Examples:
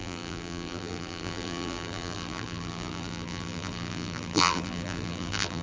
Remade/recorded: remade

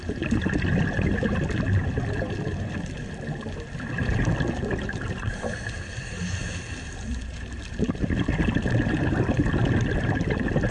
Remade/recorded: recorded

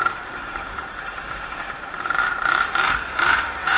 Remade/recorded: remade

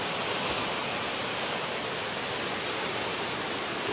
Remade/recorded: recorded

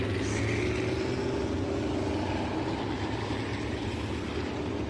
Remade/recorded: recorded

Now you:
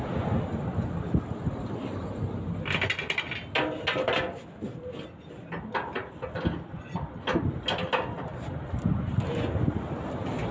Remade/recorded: recorded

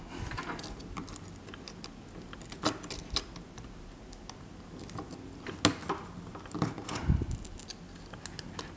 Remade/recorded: recorded